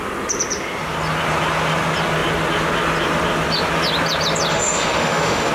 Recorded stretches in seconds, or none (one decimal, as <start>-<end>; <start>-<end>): 0.0-4.5